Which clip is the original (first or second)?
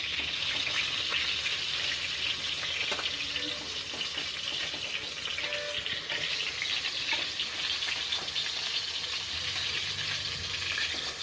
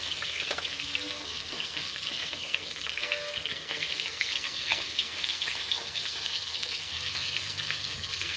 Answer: first